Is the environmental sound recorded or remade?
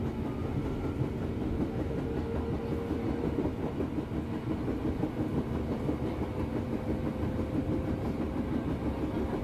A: recorded